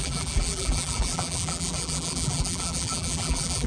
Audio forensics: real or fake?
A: fake